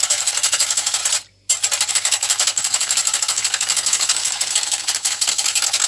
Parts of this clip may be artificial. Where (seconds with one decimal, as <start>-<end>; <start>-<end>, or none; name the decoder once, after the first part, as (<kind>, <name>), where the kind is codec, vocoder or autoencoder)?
0.0-1.0 (codec, SNAC); 1.9-5.9